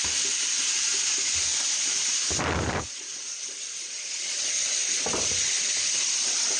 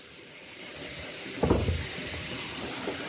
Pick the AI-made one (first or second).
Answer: second